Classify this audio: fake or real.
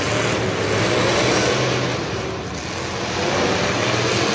real